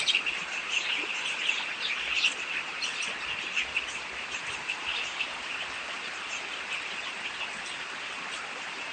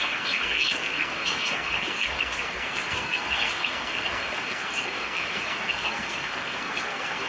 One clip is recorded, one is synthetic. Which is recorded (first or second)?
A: first